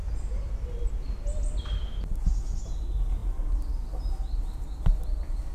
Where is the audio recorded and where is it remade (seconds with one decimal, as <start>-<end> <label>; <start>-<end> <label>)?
0.0-0.9 remade; 0.9-5.5 recorded